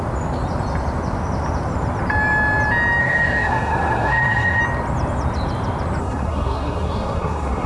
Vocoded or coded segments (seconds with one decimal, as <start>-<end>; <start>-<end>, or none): 3.0-4.6; 6.0-7.7